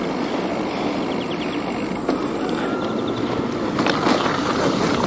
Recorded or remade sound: recorded